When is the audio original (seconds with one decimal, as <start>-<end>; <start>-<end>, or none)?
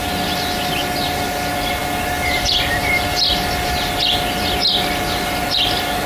0.0-6.1